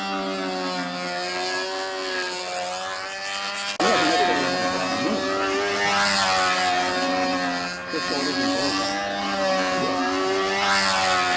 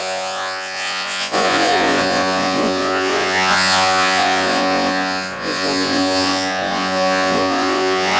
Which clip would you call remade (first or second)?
second